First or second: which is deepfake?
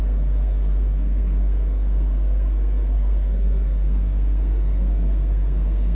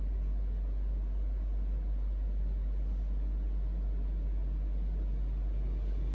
first